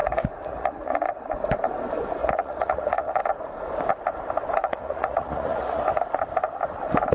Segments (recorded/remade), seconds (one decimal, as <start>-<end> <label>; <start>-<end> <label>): 0.0-1.1 remade; 1.1-2.2 recorded; 2.2-3.2 remade; 3.2-4.6 recorded; 4.6-5.8 remade; 5.8-7.1 recorded